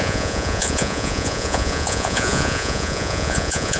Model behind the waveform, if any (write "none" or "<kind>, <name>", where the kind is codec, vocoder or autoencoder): vocoder, Vocos